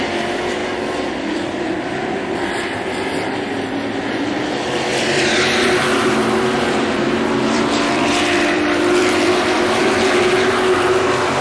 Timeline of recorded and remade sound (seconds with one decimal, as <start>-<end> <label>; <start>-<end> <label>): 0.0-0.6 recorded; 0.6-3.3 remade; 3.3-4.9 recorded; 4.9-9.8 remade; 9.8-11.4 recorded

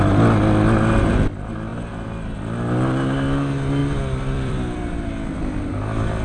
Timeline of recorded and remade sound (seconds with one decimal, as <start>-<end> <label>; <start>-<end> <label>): 0.0-3.8 recorded; 3.8-5.1 remade; 5.1-6.2 recorded

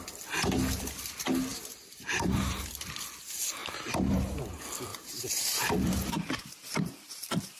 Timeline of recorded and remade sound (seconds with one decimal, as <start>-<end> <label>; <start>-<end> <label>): 0.0-1.5 recorded; 1.5-3.0 remade; 3.0-3.6 recorded; 3.6-4.2 remade; 4.2-4.9 recorded; 4.9-7.1 remade; 7.1-7.6 recorded

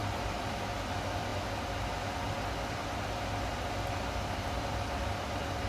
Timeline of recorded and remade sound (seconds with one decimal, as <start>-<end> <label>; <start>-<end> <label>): 0.0-0.6 remade; 0.6-5.7 recorded

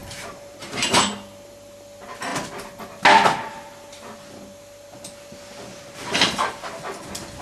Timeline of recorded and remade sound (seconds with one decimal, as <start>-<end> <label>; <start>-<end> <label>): 0.0-1.1 remade; 1.1-5.7 recorded; 5.7-6.5 remade; 6.5-7.4 recorded